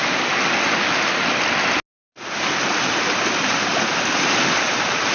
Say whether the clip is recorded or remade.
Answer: recorded